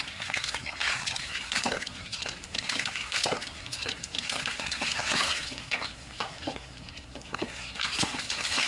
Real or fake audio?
fake